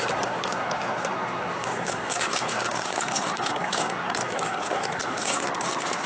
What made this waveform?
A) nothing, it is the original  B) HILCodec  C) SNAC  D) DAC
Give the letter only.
C